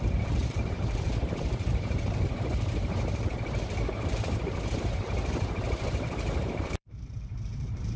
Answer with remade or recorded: remade